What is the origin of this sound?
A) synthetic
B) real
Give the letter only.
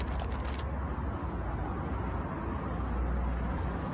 B